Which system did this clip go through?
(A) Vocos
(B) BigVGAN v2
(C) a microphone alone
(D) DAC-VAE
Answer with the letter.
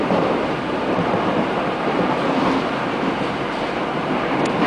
B